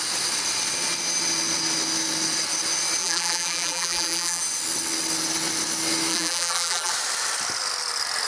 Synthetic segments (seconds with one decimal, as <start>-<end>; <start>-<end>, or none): 3.0-4.4; 6.1-6.9